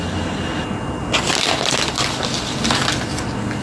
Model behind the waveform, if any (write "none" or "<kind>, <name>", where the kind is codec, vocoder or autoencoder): none